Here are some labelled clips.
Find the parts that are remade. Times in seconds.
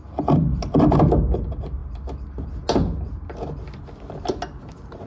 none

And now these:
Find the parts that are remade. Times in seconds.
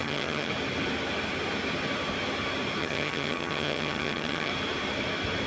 0.0-0.5; 2.8-4.5